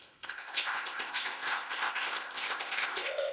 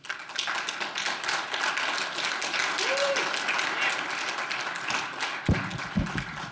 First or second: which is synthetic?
first